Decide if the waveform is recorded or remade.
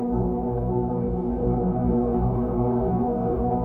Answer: remade